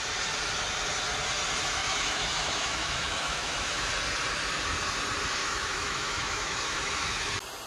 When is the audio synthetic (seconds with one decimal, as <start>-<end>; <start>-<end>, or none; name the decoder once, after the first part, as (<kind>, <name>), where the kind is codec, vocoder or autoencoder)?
1.8-3.9 (autoencoder, DAC-VAE); 5.4-7.3